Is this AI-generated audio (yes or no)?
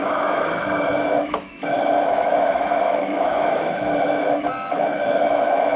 yes